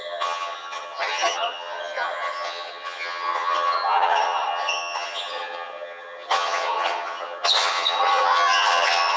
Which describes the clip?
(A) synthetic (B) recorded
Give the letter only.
A